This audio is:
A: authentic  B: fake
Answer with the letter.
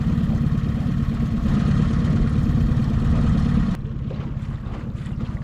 A